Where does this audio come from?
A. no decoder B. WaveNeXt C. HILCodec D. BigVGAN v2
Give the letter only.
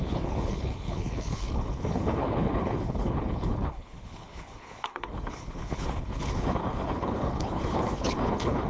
C